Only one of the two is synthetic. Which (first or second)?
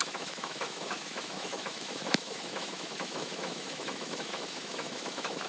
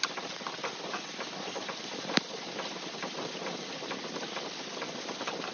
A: first